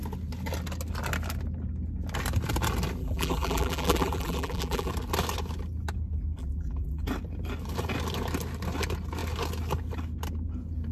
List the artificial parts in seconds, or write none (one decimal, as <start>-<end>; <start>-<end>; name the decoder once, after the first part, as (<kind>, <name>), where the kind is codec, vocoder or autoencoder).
3.0-4.9 (vocoder, BigVGAN v2); 6.4-7.0